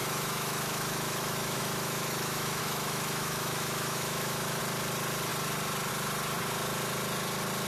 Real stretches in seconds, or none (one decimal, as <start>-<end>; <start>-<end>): 4.6-7.7